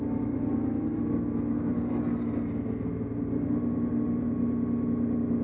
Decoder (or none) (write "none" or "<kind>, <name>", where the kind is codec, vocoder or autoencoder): none